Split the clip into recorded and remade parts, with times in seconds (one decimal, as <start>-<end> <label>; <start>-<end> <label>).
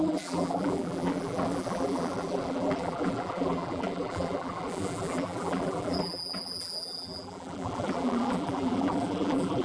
0.0-9.6 remade